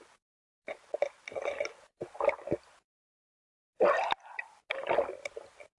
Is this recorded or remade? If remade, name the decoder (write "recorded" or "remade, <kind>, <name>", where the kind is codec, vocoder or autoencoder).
recorded